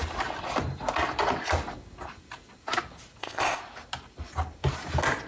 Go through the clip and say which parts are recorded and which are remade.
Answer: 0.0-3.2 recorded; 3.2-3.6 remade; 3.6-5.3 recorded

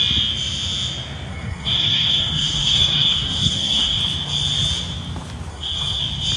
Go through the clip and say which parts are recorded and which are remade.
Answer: 0.0-1.3 recorded; 1.3-4.0 remade; 4.0-5.5 recorded; 5.5-6.0 remade; 6.0-6.4 recorded

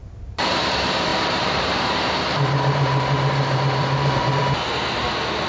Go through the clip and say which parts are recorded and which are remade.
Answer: 0.0-0.6 remade; 0.6-1.1 recorded; 1.1-4.4 remade; 4.4-5.5 recorded

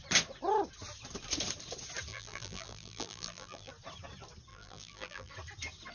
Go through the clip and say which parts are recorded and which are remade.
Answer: 0.0-2.1 recorded; 2.1-3.7 remade; 3.7-4.5 recorded; 4.5-5.3 remade; 5.3-5.9 recorded